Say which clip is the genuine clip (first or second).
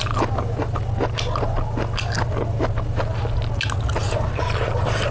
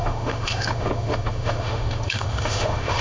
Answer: first